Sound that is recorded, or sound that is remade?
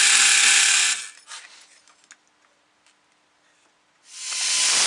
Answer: recorded